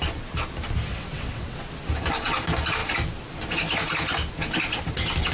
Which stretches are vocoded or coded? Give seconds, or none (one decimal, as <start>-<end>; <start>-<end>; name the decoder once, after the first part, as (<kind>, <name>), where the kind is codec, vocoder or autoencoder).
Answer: 0.9-1.6 (vocoder, WaveNeXt)